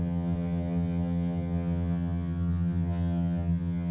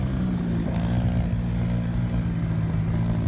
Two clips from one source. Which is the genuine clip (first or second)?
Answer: second